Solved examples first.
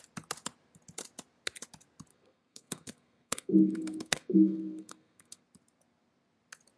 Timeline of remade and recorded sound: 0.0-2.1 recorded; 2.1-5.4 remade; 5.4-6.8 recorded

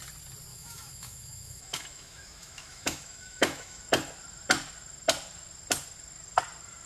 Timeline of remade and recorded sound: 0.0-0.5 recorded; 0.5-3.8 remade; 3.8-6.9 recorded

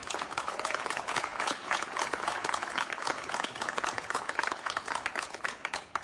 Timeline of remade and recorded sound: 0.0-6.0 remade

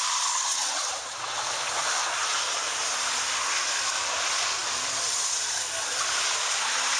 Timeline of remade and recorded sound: 0.0-0.5 recorded; 0.5-1.4 remade; 1.4-7.0 recorded

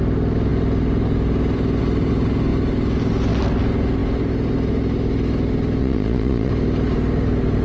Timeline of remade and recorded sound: 0.0-5.8 recorded; 5.8-6.5 remade; 6.5-7.6 recorded

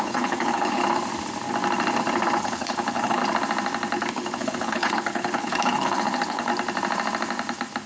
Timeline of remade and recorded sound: 0.0-0.8 remade; 0.8-2.4 recorded; 2.4-3.2 remade; 3.2-4.1 recorded; 4.1-6.5 remade; 6.5-7.9 recorded

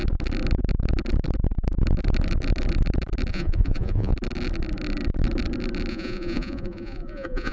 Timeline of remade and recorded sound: 0.0-3.3 recorded; 3.3-4.1 remade; 4.1-5.9 recorded; 5.9-7.5 remade